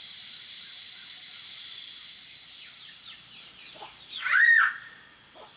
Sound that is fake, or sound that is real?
real